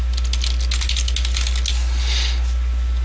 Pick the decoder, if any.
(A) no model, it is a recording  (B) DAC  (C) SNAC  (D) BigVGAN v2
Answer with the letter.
A